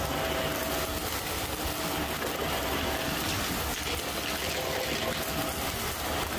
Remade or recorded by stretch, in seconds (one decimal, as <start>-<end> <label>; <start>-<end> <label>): 0.0-6.4 recorded